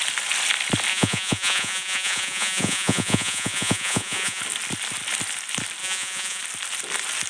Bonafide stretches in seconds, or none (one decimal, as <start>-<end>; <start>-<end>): 0.0-0.9; 4.4-5.8; 6.4-7.3